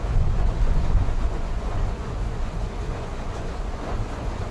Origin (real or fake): fake